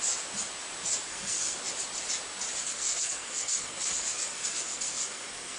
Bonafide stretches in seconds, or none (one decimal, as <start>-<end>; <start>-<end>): 0.0-1.1; 1.6-2.6